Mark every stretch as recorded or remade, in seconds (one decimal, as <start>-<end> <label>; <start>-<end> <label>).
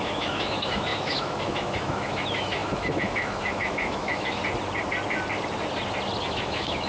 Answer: 0.0-4.4 remade; 4.4-6.2 recorded; 6.2-6.9 remade